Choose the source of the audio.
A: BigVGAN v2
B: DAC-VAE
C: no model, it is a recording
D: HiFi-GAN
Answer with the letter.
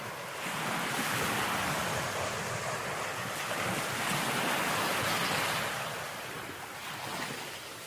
C